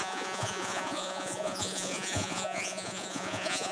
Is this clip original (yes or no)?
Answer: no